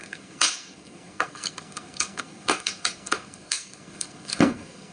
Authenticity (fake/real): fake